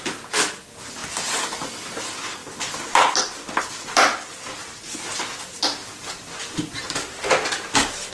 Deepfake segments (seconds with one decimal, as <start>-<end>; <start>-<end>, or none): 4.6-5.2; 5.8-6.8